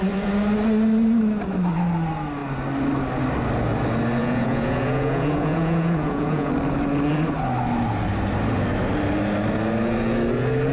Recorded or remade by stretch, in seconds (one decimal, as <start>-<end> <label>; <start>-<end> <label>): 0.0-4.2 recorded; 4.2-6.5 remade; 6.5-10.7 recorded